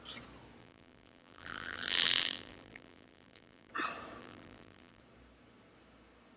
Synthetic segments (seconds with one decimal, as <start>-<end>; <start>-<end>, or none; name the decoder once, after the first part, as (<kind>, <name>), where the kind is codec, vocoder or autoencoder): 0.6-3.7 (vocoder, BigVGAN v2); 4.2-5.0